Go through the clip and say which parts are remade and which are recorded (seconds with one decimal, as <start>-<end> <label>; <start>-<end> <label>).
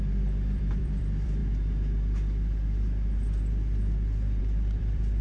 0.0-1.4 remade; 1.4-4.4 recorded; 4.4-5.2 remade